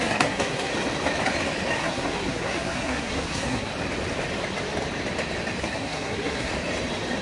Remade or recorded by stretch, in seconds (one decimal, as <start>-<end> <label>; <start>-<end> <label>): 0.0-0.7 remade; 0.7-1.8 recorded; 1.8-3.7 remade; 3.7-5.6 recorded; 5.6-6.5 remade; 6.5-7.2 recorded